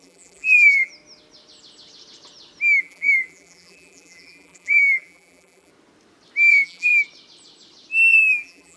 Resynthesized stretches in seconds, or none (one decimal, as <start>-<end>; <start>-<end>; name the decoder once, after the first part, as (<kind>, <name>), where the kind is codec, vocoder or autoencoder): 0.0-0.9 (vocoder, BigVGAN v2); 2.8-5.7; 6.5-6.9; 8.1-8.8